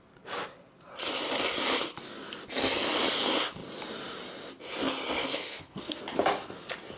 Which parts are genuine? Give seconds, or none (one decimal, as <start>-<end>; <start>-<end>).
0.0-5.2; 6.0-7.0